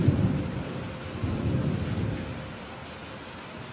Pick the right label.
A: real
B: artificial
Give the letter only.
A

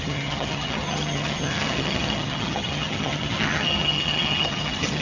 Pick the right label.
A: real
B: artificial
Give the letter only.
B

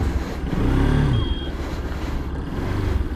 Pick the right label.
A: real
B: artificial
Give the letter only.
A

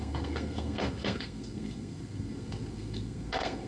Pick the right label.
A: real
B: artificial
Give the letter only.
B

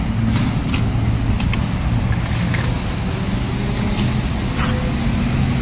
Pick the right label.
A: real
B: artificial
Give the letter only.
A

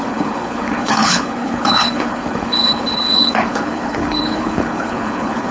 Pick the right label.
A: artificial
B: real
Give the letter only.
A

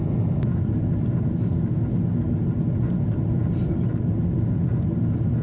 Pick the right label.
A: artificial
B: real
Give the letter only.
B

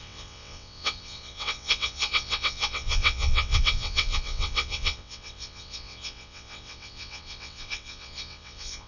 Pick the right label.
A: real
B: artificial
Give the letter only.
B